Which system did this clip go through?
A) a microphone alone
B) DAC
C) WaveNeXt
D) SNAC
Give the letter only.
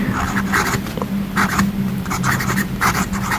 A